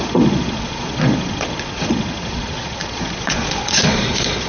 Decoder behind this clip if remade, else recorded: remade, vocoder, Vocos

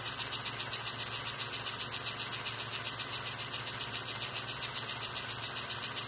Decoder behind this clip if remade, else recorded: recorded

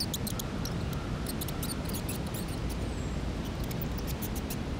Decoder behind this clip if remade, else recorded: recorded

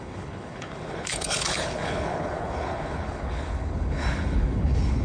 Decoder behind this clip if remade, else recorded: remade, codec, HILCodec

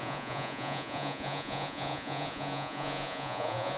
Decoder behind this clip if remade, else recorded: remade, vocoder, Vocos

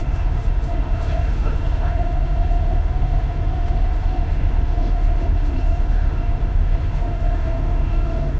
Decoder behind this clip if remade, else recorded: remade, autoencoder, DAC-VAE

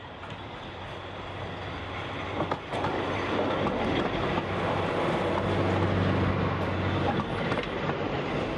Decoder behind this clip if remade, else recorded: recorded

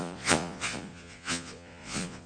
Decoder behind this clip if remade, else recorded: remade, vocoder, Vocos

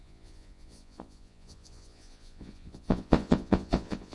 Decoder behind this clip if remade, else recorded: remade, vocoder, Vocos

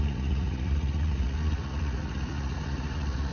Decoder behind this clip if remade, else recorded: remade, vocoder, Vocos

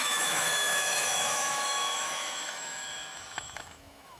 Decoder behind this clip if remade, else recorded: remade, autoencoder, DAC-VAE